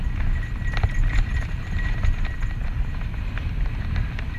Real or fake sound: real